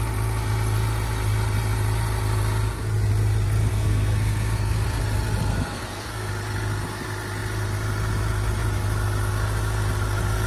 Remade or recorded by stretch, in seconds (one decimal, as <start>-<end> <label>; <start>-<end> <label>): 0.0-3.7 recorded; 3.7-5.0 remade; 5.0-5.5 recorded; 5.5-6.3 remade; 6.3-10.5 recorded